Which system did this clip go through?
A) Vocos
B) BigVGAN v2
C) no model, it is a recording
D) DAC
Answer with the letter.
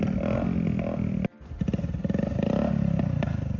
C